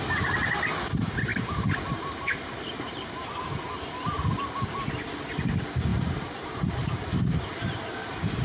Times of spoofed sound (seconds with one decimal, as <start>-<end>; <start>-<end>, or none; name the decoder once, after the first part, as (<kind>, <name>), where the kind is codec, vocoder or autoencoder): 1.3-3.3 (vocoder, BigVGAN v2); 5.9-7.2

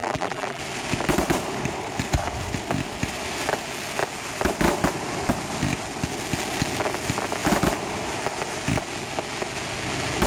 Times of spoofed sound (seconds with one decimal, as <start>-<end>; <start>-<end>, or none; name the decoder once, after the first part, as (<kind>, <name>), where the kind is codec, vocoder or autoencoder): 0.0-0.6 (vocoder, BigVGAN v2)

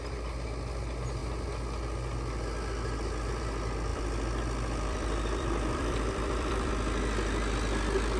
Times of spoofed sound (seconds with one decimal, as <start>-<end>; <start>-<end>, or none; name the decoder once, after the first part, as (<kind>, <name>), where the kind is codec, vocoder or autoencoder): 3.9-6.7 (vocoder, BigVGAN v2)

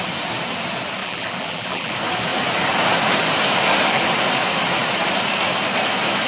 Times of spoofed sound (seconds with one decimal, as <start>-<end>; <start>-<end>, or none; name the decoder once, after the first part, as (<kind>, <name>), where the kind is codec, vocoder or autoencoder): 1.0-1.9 (vocoder, BigVGAN v2)

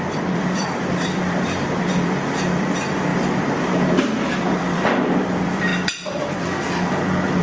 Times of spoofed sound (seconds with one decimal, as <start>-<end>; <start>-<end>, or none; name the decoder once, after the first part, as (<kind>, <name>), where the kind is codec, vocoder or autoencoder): 0.0-7.4 (vocoder, BigVGAN v2)

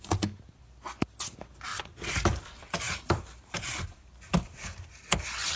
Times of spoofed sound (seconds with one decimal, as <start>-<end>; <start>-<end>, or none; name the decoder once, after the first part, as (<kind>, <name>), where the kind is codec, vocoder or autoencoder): none

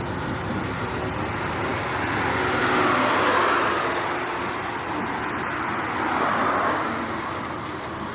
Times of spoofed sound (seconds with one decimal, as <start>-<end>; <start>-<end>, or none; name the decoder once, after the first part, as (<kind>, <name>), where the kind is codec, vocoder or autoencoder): none

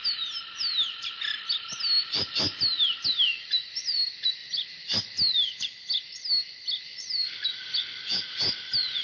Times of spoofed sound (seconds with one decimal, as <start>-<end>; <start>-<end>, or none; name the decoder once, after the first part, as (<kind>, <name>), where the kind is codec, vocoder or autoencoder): none